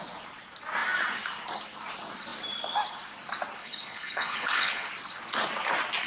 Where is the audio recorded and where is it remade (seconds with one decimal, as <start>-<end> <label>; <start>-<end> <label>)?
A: 0.0-3.6 recorded; 3.6-4.9 remade; 4.9-6.1 recorded